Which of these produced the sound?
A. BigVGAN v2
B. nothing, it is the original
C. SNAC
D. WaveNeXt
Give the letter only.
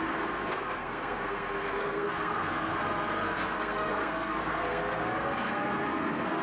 C